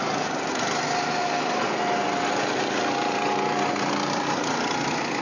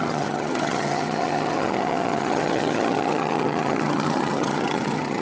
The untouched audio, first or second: first